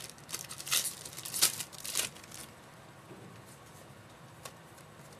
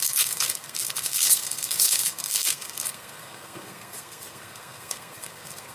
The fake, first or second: second